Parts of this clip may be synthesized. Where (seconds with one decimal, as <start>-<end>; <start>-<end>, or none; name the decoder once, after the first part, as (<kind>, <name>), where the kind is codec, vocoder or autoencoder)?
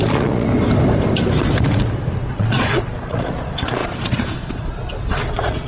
0.0-0.5 (vocoder, Vocos); 2.2-5.7